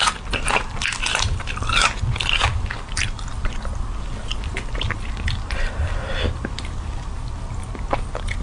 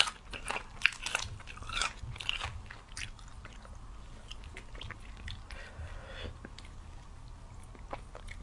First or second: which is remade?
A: first